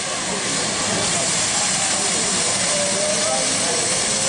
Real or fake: real